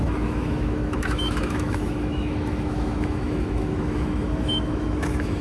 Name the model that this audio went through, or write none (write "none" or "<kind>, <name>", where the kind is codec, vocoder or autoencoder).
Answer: autoencoder, DAC-VAE